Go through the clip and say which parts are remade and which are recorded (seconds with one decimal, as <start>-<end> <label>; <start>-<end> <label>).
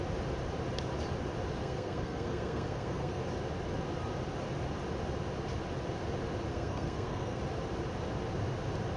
0.0-1.6 recorded; 1.6-3.2 remade; 3.2-6.5 recorded; 6.5-7.4 remade; 7.4-9.0 recorded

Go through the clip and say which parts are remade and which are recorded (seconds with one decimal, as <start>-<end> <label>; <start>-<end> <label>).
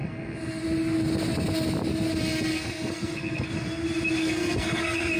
0.0-0.6 remade; 0.6-2.5 recorded; 2.5-3.5 remade; 3.5-4.2 recorded; 4.2-5.2 remade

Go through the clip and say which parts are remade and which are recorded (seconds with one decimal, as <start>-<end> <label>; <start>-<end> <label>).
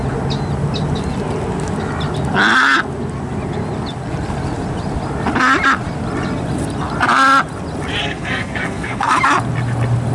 0.0-8.0 recorded; 8.0-9.1 remade; 9.1-10.1 recorded